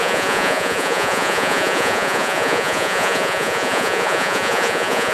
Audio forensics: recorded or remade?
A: remade